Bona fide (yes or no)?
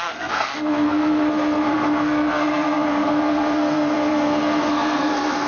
no